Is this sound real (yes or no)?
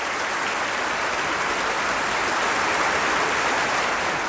yes